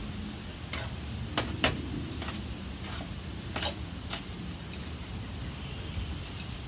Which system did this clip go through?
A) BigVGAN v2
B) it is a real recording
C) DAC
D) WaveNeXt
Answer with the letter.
B